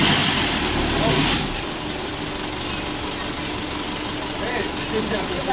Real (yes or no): yes